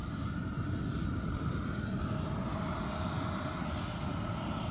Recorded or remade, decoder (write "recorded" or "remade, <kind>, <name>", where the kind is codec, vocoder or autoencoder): recorded